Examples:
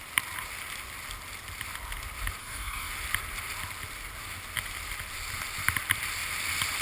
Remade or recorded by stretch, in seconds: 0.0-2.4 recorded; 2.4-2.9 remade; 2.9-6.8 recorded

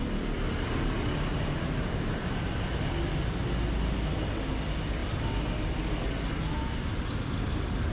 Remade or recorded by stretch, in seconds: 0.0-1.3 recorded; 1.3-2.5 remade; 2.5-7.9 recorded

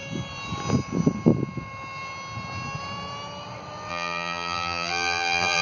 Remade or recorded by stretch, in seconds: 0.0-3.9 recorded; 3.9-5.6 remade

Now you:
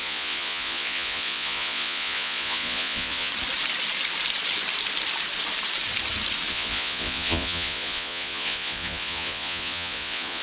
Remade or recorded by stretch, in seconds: 0.0-3.3 remade; 3.3-6.5 recorded; 6.5-10.4 remade